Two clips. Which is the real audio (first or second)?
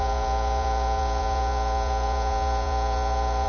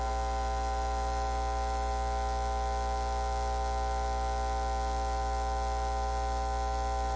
second